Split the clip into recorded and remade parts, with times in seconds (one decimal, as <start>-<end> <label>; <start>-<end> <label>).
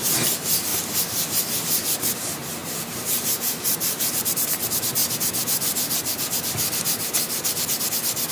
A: 0.0-0.7 remade; 0.7-1.4 recorded; 1.4-5.0 remade; 5.0-8.3 recorded